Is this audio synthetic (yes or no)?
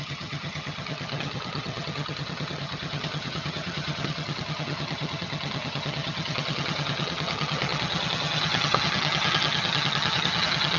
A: yes